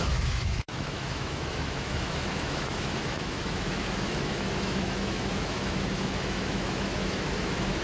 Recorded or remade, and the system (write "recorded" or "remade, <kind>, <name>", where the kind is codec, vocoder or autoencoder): remade, autoencoder, DAC-VAE